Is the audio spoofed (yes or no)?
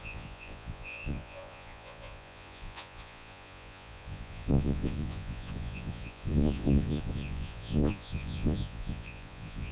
yes